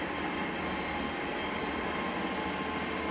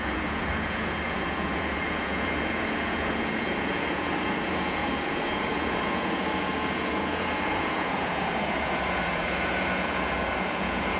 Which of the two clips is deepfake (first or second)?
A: second